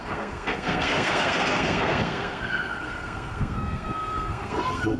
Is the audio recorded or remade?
remade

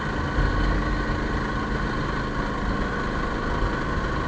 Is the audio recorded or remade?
recorded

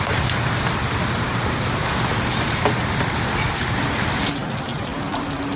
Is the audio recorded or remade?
recorded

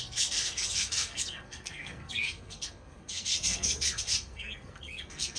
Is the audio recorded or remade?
remade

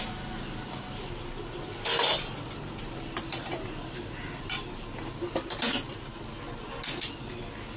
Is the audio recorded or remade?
recorded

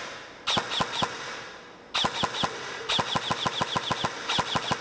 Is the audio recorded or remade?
recorded